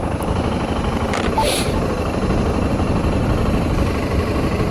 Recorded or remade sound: recorded